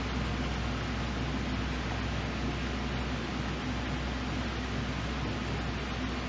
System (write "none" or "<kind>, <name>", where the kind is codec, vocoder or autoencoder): none